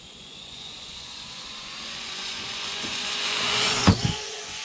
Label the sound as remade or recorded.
remade